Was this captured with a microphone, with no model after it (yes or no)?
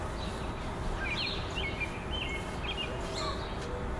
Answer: yes